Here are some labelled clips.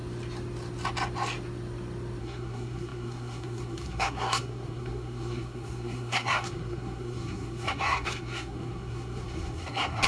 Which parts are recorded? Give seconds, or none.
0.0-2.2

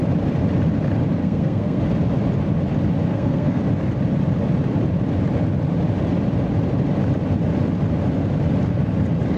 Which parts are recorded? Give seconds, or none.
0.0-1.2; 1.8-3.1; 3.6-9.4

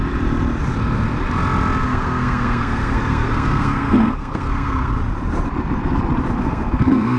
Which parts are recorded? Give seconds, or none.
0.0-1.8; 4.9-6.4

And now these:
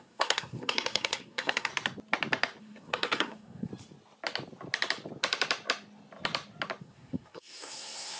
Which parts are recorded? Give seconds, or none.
1.7-2.6; 3.7-6.8

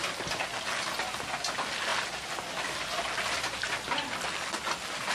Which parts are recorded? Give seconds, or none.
0.0-5.1